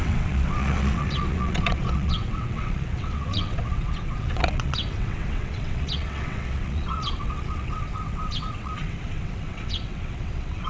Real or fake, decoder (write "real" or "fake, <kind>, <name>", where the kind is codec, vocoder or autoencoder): fake, vocoder, WaveNeXt